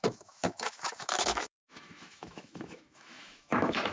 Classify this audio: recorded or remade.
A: remade